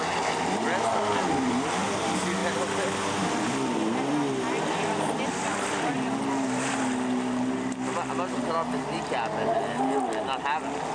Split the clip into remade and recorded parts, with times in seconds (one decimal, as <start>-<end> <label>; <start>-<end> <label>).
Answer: 0.0-10.9 recorded